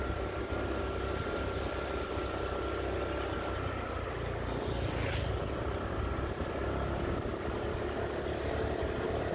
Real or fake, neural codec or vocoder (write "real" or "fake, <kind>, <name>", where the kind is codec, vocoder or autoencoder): real